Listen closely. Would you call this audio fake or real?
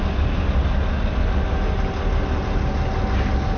real